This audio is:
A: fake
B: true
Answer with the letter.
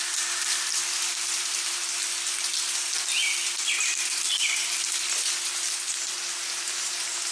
B